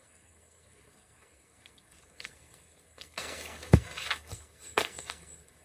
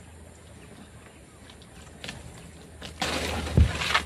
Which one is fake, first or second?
first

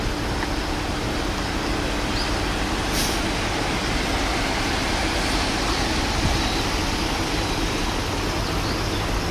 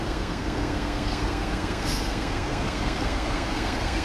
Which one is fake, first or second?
second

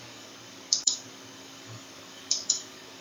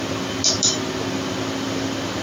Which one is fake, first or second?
first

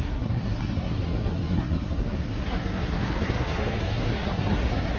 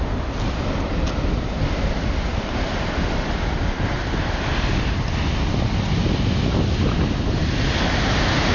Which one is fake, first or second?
first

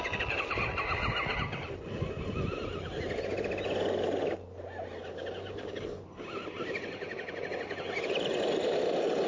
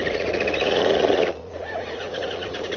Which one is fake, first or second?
second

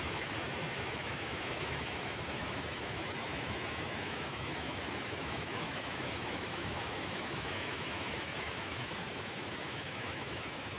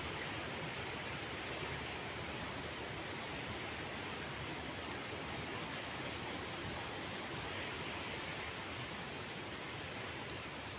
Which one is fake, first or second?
first